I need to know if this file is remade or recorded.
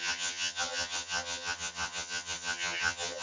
remade